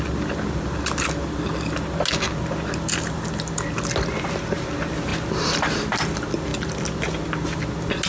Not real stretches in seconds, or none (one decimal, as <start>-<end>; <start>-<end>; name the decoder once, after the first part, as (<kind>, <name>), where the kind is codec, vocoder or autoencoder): none